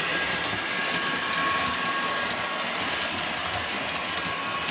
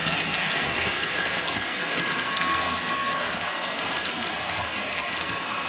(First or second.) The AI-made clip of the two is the second